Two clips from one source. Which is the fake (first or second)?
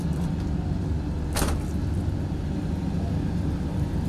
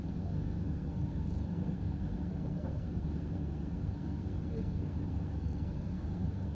second